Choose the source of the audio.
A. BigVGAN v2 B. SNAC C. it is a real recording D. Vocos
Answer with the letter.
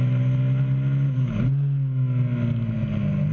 C